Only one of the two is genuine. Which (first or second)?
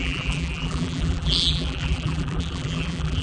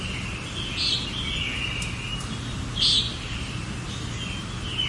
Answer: second